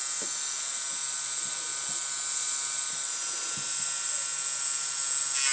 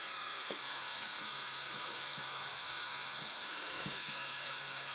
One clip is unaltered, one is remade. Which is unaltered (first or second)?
first